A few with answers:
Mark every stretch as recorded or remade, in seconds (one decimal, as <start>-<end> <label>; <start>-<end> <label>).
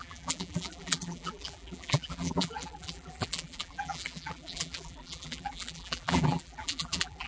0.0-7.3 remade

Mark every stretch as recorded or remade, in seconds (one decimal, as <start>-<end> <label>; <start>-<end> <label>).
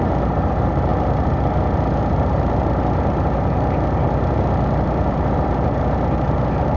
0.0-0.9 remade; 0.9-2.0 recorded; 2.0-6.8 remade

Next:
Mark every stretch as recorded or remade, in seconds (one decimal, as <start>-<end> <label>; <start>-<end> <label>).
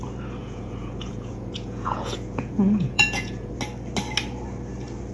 0.0-0.4 recorded; 0.4-3.5 remade; 3.5-5.1 recorded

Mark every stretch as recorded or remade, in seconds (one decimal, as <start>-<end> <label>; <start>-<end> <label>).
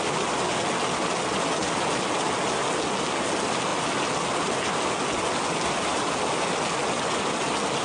0.0-7.8 recorded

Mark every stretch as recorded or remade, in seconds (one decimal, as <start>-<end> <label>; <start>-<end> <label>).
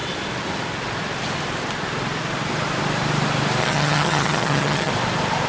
0.0-3.6 recorded; 3.6-4.9 remade; 4.9-5.5 recorded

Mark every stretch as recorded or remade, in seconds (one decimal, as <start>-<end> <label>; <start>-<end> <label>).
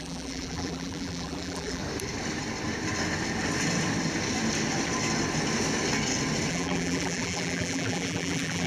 0.0-1.8 remade; 1.8-6.5 recorded; 6.5-8.7 remade